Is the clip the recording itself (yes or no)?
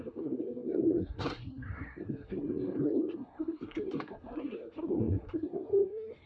no